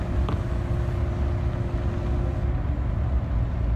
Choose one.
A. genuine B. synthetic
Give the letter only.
A